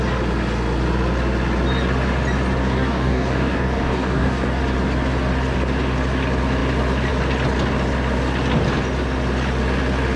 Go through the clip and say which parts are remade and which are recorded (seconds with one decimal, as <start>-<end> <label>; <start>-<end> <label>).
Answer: 0.0-2.6 recorded; 2.6-4.6 remade; 4.6-10.2 recorded